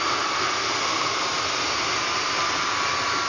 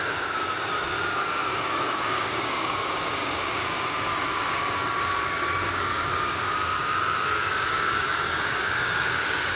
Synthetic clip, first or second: second